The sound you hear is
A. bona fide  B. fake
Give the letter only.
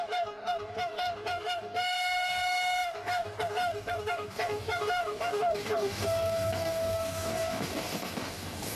B